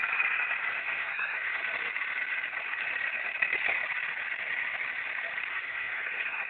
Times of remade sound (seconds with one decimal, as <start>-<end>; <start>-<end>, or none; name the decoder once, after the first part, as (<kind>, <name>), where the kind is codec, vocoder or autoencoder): 0.8-1.6 (codec, SNAC); 5.5-6.5